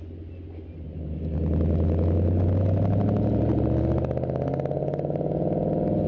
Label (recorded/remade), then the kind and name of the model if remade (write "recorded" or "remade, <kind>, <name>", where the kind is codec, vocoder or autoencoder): recorded